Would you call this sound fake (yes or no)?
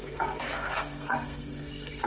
yes